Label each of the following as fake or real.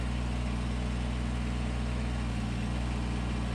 real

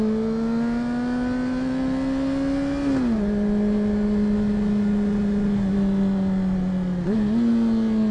real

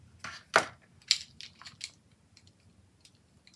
real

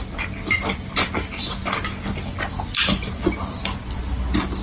real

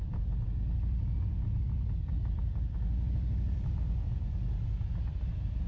real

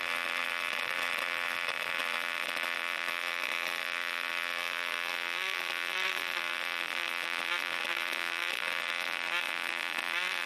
fake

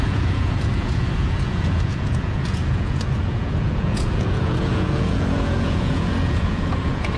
fake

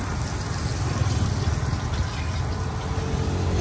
real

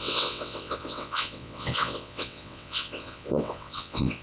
fake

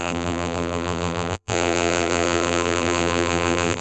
fake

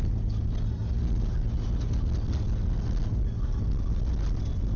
real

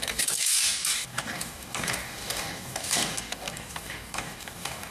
fake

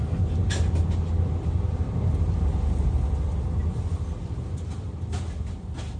real